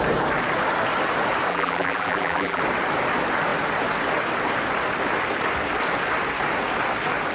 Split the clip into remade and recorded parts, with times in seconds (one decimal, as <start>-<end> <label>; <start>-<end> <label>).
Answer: 0.0-1.5 recorded; 1.5-2.6 remade; 2.6-7.3 recorded